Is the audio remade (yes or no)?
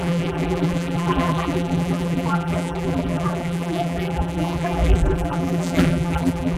yes